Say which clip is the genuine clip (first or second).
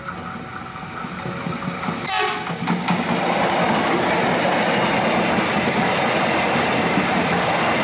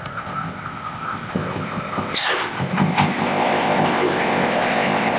first